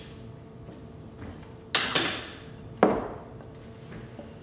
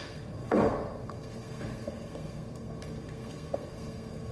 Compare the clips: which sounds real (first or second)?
first